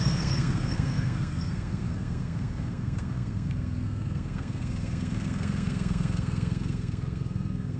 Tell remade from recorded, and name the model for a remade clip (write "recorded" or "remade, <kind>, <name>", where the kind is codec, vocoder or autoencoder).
remade, codec, SNAC